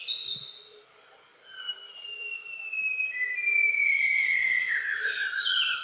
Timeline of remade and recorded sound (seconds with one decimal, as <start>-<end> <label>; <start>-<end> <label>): 0.0-5.8 recorded